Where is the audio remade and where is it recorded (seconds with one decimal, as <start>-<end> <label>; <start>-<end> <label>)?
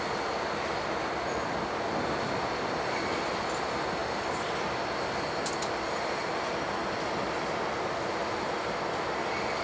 0.0-9.6 recorded